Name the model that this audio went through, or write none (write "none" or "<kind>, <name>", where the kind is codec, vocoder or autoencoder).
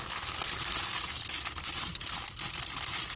none